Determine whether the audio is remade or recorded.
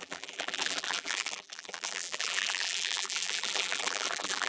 remade